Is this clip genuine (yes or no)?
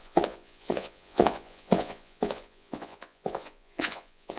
no